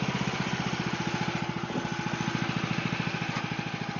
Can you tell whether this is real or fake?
real